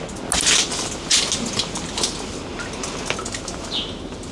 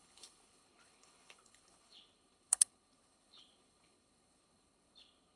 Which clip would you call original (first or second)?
first